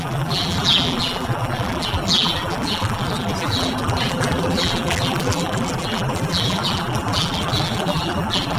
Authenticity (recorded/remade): remade